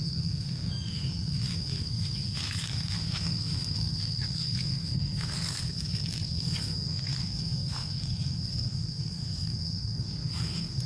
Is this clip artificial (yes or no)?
yes